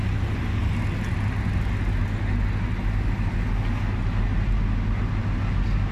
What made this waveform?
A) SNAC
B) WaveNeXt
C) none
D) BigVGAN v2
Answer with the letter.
C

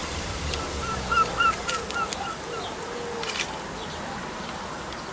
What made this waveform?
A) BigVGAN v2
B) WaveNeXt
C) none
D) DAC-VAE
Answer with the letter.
C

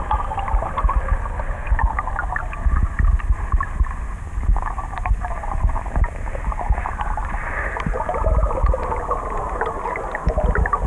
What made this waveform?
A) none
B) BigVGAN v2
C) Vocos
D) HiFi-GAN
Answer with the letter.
A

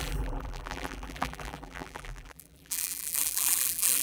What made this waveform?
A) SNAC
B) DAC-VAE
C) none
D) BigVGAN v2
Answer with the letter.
D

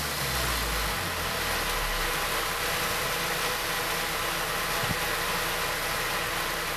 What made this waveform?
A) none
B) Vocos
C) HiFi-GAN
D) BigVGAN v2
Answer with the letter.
A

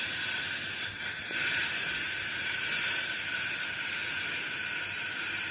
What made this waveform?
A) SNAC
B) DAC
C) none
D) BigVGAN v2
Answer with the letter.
D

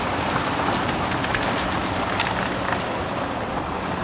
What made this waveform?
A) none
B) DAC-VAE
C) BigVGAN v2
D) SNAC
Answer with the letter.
A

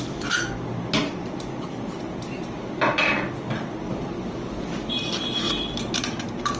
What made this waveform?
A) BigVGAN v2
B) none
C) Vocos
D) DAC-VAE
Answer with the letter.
B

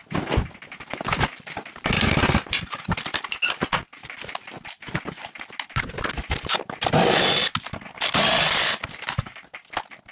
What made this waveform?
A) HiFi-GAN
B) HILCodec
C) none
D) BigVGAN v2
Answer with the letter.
C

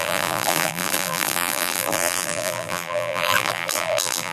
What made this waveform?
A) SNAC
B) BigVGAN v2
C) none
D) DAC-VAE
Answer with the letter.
B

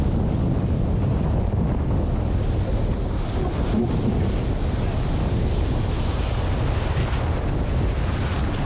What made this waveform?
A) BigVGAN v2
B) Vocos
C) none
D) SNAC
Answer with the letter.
C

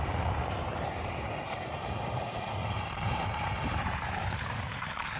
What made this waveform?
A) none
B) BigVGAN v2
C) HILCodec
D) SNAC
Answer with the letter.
B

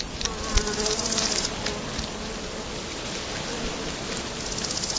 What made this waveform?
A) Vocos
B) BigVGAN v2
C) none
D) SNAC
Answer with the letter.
C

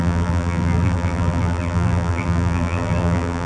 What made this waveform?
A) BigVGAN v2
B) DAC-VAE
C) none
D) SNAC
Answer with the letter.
A